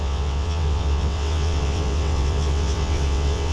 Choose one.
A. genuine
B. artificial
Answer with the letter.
B